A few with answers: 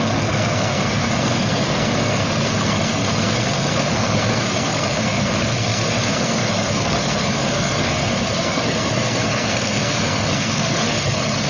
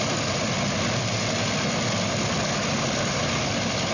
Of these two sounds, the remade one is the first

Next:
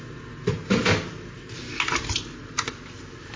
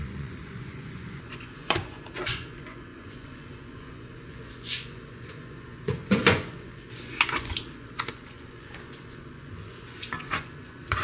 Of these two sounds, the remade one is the second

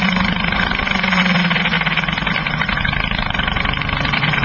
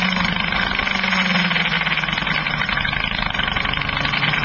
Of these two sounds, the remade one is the first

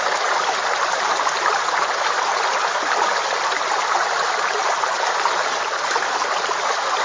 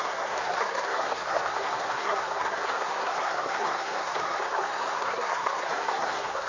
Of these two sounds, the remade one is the second